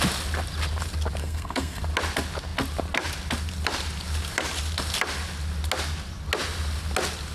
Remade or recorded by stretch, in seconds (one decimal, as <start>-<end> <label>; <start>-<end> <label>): 0.0-1.2 recorded; 1.2-1.8 remade; 1.8-7.3 recorded

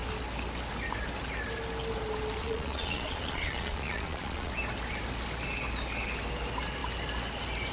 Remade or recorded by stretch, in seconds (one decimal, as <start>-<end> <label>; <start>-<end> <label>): 0.0-2.4 recorded; 2.4-4.5 remade; 4.5-7.7 recorded

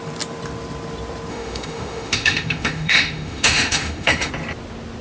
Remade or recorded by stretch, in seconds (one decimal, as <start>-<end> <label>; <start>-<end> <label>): 0.0-1.3 recorded; 1.3-4.3 remade; 4.3-5.0 recorded

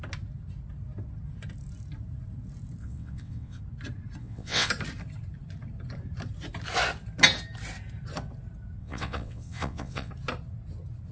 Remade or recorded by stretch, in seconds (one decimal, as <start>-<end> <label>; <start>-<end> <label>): 0.0-2.8 recorded; 2.8-3.6 remade; 3.6-4.2 recorded; 4.2-4.7 remade; 4.7-8.8 recorded; 8.8-10.1 remade; 10.1-11.1 recorded

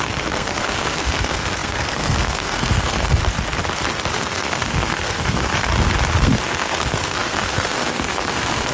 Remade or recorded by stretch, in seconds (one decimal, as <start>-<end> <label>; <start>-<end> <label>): 0.0-3.2 remade; 3.2-4.1 recorded; 4.1-5.7 remade; 5.7-6.2 recorded; 6.2-8.7 remade